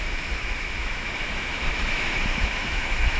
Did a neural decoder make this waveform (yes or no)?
yes